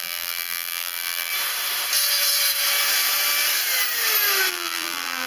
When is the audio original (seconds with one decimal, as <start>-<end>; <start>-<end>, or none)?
1.3-4.5